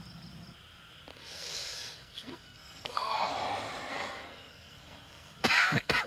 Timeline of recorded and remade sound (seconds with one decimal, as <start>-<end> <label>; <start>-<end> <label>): 0.0-1.1 recorded; 1.1-3.3 remade; 3.3-3.9 recorded; 3.9-6.1 remade